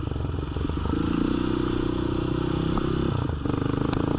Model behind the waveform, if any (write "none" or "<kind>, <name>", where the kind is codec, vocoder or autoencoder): none